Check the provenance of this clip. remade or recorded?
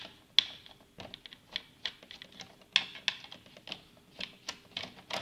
recorded